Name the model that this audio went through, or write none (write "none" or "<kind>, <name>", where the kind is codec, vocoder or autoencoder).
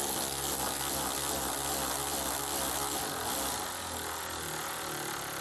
none